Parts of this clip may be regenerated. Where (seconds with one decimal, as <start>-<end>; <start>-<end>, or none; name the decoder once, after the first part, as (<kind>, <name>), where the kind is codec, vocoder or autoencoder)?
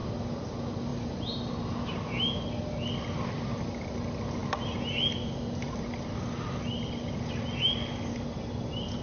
none